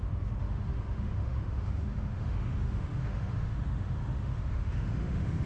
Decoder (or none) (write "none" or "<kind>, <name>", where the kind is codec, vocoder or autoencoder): autoencoder, DAC-VAE